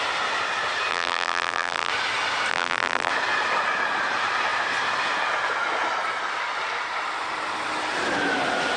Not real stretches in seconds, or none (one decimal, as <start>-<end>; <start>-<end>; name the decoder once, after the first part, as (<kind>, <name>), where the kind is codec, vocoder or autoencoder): 0.9-1.9 (vocoder, BigVGAN v2); 2.5-3.1